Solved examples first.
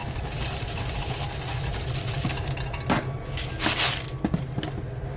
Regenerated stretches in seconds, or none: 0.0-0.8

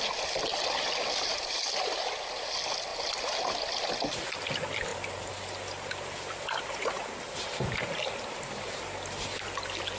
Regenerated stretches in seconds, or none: none

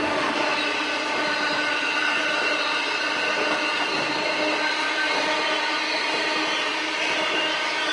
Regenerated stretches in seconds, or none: none

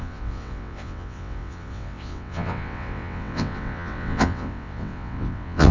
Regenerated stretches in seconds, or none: 0.0-5.7